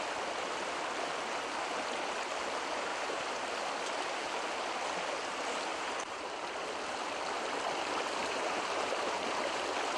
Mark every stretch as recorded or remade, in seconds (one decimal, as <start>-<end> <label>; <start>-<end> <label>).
0.0-2.9 recorded; 2.9-3.4 remade; 3.4-5.7 recorded; 5.7-6.6 remade; 6.6-8.2 recorded; 8.2-8.9 remade; 8.9-10.0 recorded